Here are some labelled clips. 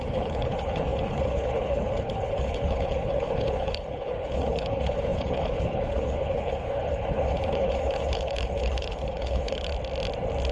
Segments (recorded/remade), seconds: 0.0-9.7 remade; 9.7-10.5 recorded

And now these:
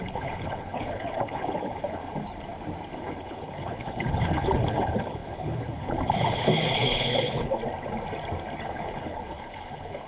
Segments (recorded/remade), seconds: 0.0-2.0 remade; 2.0-3.0 recorded; 3.0-7.6 remade; 7.6-8.6 recorded; 8.6-10.1 remade

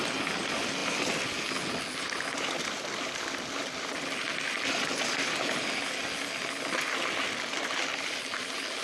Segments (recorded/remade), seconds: 0.0-8.8 recorded